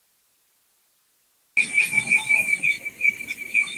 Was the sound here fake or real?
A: real